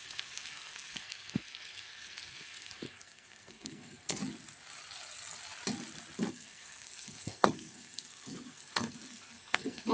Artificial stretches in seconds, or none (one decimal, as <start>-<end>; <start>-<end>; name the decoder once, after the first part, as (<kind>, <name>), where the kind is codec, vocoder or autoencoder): 0.0-4.2 (codec, SNAC); 6.3-9.9